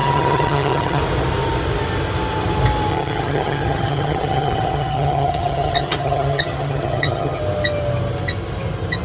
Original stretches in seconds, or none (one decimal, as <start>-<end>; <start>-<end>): 1.0-2.9; 7.4-9.0